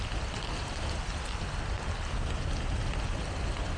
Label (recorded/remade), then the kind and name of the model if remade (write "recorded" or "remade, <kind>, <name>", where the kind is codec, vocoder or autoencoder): recorded